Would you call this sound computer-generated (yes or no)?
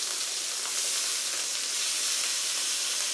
no